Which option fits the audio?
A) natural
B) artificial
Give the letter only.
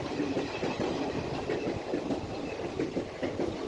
A